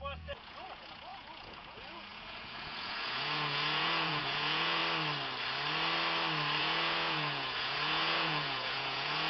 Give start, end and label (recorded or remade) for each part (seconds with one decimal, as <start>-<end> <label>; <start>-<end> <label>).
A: 0.0-4.8 remade; 4.8-6.6 recorded; 6.6-9.3 remade